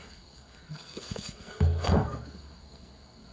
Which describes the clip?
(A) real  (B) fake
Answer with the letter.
B